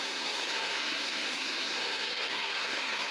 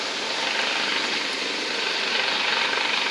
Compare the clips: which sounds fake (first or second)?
first